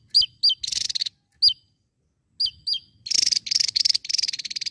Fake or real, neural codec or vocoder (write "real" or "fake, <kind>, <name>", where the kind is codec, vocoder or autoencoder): real